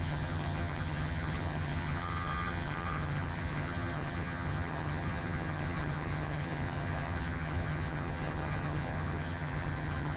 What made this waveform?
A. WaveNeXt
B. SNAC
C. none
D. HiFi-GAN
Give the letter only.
D